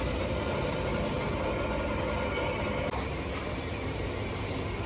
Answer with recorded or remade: recorded